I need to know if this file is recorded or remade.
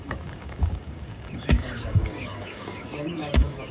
remade